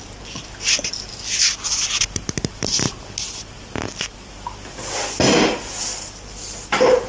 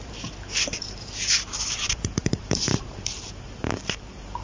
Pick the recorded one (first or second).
first